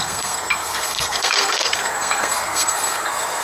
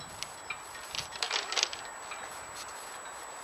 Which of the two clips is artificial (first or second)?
first